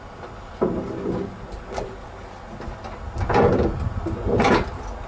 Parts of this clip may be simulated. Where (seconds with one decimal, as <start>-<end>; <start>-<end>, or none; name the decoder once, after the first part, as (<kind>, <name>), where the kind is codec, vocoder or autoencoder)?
none